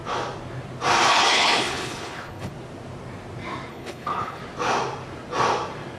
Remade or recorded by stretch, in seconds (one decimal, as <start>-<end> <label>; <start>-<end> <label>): 0.0-1.1 recorded; 1.1-2.5 remade; 2.5-3.7 recorded; 3.7-4.4 remade; 4.4-6.0 recorded

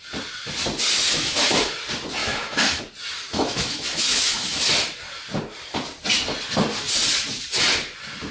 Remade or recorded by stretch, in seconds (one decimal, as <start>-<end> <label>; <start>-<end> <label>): 0.0-1.0 recorded; 1.0-1.7 remade; 1.7-2.2 recorded; 2.2-2.8 remade; 2.8-3.3 recorded; 3.3-4.6 remade; 4.6-8.3 recorded

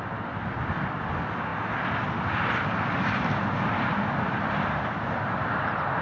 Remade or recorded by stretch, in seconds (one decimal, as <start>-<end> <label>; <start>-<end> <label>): 0.0-6.0 recorded

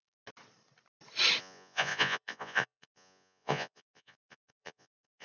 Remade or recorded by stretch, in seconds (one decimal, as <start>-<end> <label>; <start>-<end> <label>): 0.0-1.4 recorded; 1.4-5.2 remade

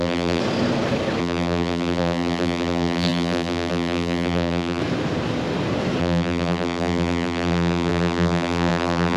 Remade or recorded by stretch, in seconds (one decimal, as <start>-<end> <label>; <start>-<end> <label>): 0.0-0.4 remade; 0.4-1.2 recorded; 1.2-4.8 remade; 4.8-6.0 recorded; 6.0-9.2 remade